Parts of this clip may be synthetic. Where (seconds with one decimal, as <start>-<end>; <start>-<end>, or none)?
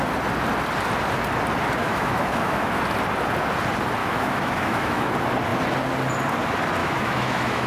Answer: 1.8-2.8; 4.0-5.1; 6.8-7.7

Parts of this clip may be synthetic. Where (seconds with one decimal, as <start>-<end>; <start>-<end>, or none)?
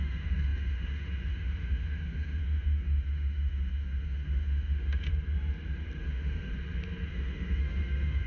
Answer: 0.0-5.1; 6.0-6.5; 7.1-8.3